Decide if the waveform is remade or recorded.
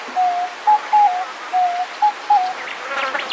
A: recorded